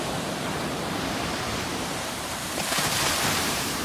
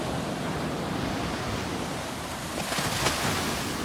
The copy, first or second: first